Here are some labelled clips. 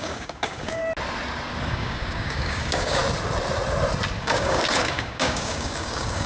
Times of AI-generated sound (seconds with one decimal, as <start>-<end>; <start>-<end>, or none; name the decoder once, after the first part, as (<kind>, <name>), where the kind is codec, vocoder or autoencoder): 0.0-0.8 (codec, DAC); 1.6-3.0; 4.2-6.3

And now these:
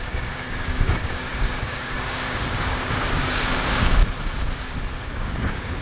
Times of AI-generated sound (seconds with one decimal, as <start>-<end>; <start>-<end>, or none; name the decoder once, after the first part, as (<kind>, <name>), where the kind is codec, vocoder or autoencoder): 0.0-4.0 (codec, DAC); 5.0-5.8

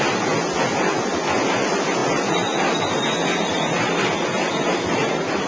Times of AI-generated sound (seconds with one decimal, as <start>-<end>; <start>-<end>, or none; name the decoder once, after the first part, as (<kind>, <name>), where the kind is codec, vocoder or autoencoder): none

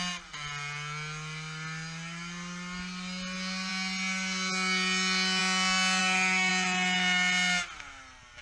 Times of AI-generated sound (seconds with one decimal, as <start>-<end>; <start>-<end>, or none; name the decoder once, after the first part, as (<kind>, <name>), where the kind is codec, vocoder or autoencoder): 6.0-6.5 (codec, DAC)

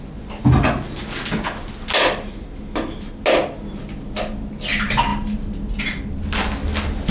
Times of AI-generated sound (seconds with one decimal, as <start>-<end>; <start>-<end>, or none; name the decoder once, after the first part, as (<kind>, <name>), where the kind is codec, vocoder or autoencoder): none